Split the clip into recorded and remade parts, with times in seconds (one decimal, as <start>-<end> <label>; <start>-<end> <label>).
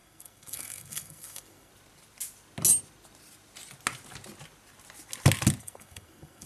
0.0-1.7 remade; 1.7-5.6 recorded; 5.6-6.5 remade